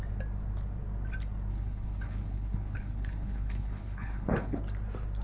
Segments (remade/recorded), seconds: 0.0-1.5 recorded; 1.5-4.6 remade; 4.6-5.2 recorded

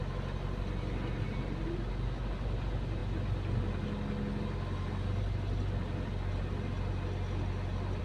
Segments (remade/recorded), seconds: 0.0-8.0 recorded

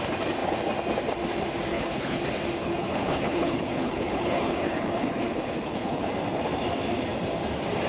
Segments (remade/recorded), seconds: 0.0-1.7 recorded; 1.7-2.2 remade; 2.2-2.6 recorded; 2.6-6.1 remade; 6.1-7.9 recorded

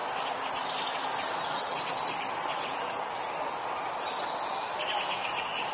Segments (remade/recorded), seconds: 0.0-5.7 recorded

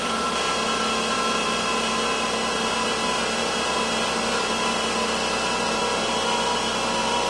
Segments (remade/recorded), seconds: 0.0-7.3 recorded

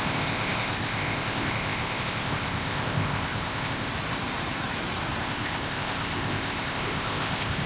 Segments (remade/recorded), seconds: 0.0-3.9 remade; 3.9-5.2 recorded; 5.2-7.7 remade